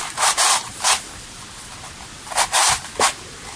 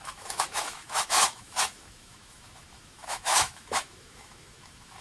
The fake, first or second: second